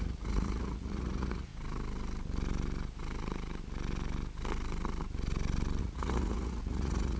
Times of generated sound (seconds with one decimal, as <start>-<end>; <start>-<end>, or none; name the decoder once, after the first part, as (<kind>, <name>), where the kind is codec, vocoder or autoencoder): 0.0-1.5 (vocoder, Vocos); 5.8-7.2

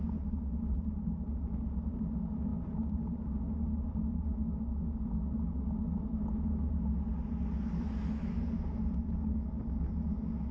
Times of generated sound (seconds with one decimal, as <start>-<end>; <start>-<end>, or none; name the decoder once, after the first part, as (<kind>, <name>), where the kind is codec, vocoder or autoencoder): none